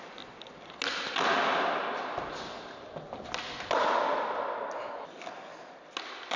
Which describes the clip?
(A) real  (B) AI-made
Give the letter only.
A